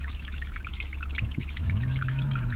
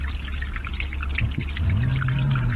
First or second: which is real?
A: second